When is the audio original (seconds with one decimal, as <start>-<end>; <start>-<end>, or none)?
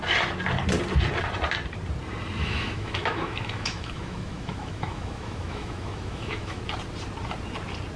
0.0-2.4; 6.6-8.0